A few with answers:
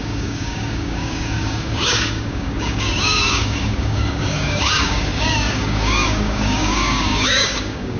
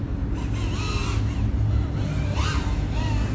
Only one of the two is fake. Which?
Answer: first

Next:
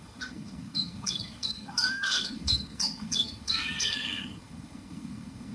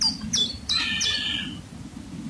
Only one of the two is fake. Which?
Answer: first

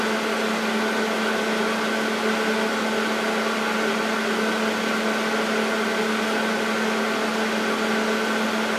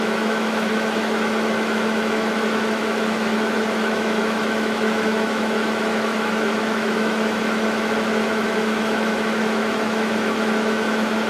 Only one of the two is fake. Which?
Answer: second